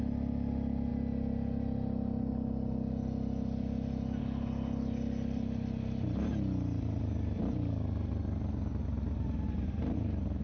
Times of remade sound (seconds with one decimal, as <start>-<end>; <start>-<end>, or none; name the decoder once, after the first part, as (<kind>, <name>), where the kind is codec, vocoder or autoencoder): none